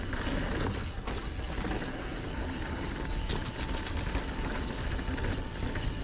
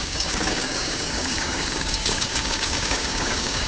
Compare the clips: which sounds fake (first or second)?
second